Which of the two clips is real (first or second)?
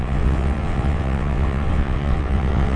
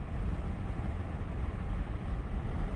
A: second